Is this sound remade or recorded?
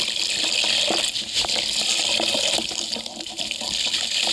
recorded